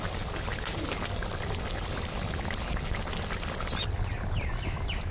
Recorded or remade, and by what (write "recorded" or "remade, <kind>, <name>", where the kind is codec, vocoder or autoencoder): recorded